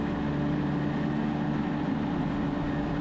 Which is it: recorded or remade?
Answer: recorded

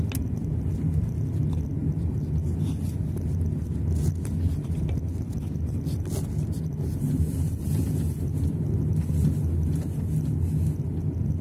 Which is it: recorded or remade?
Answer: recorded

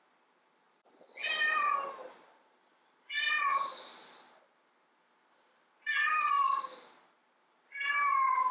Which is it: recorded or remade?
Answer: recorded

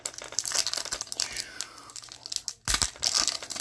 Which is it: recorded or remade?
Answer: recorded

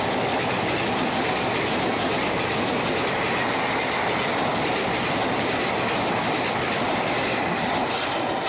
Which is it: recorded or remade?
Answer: recorded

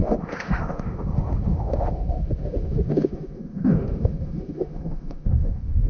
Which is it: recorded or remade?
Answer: remade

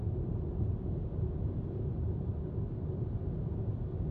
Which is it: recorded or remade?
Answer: recorded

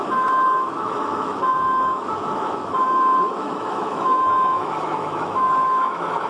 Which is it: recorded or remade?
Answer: remade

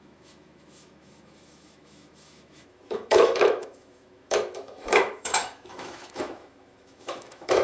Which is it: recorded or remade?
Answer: remade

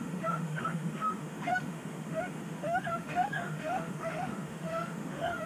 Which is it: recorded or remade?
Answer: remade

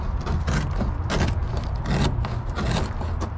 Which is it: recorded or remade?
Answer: recorded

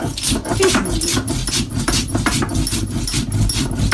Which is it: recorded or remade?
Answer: recorded